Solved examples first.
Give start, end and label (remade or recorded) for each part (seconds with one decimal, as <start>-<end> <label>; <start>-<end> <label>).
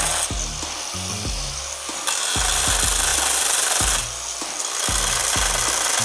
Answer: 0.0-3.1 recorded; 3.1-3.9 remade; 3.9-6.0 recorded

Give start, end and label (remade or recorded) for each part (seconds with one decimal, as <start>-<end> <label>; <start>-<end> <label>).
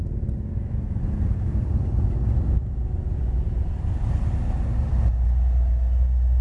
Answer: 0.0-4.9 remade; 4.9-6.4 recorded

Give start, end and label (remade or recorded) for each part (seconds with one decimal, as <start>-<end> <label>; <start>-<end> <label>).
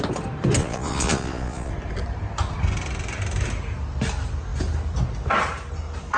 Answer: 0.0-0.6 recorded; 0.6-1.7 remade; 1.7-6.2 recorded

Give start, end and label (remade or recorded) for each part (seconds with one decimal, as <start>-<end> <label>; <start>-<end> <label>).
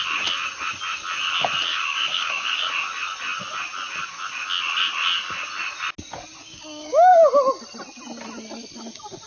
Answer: 0.0-1.7 recorded; 1.7-2.6 remade; 2.6-6.4 recorded; 6.4-7.1 remade; 7.1-9.3 recorded